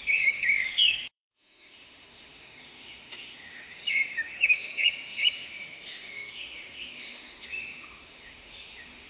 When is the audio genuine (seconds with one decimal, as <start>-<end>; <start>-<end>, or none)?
none